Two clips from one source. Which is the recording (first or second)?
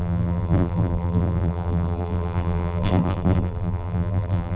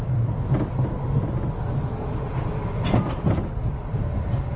second